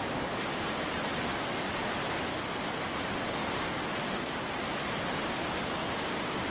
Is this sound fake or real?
real